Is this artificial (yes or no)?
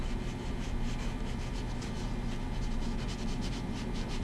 no